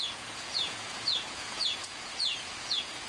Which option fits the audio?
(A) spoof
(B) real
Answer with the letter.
A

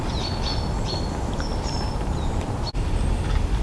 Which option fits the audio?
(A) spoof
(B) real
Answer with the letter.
B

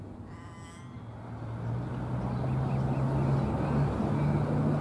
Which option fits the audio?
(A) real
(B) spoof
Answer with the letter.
A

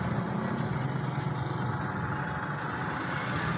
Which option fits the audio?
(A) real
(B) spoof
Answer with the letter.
A